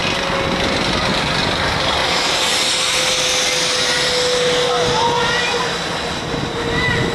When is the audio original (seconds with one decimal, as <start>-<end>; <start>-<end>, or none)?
0.0-7.1